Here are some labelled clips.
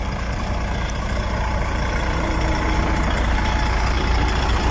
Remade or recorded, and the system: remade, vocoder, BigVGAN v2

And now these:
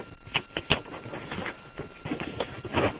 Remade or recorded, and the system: recorded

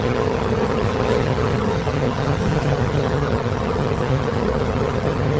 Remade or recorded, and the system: remade, vocoder, HiFi-GAN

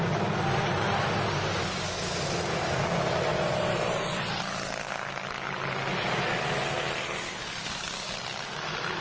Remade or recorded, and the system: recorded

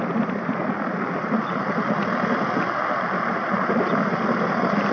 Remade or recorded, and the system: recorded